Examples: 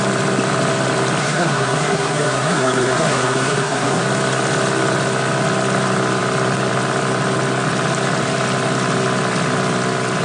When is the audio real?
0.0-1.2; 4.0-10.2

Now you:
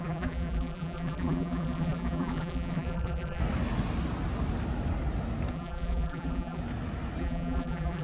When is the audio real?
3.4-5.5; 6.6-7.2

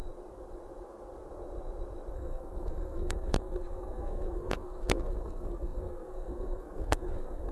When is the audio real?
0.0-2.1

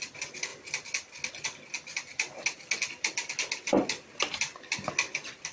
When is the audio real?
0.0-5.5

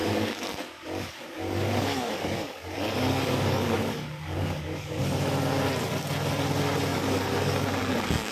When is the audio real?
5.0-6.9

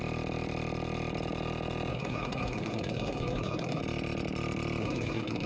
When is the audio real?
0.0-1.9; 3.8-4.8